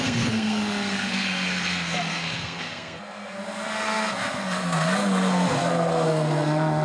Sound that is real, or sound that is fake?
fake